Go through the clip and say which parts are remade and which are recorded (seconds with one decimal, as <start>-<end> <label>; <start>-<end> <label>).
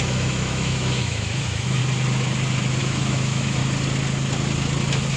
0.0-1.8 remade; 1.8-2.8 recorded; 2.8-3.6 remade; 3.6-5.2 recorded